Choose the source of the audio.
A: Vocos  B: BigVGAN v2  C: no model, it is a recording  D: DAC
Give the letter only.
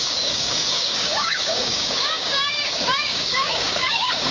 D